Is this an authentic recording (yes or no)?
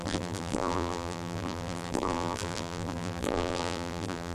no